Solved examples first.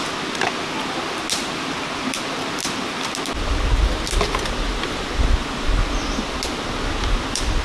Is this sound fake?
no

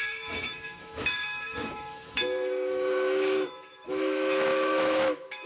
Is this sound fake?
yes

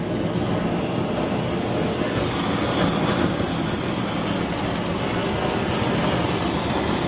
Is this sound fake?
no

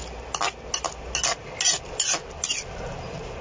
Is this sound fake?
no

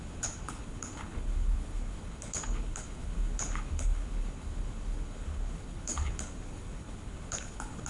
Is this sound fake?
yes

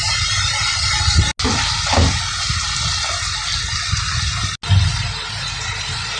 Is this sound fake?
no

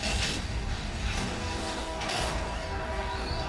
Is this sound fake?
yes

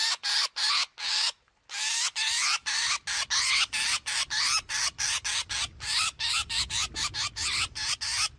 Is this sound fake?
no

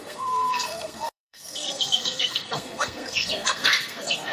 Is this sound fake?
yes